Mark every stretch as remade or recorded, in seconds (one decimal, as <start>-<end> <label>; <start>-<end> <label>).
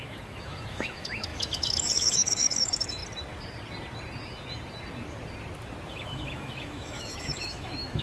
0.0-3.0 remade; 3.0-5.9 recorded; 5.9-8.0 remade